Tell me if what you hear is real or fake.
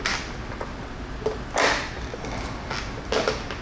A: real